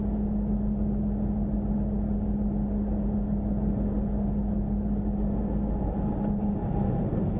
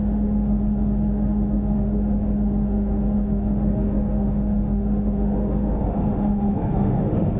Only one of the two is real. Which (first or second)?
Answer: first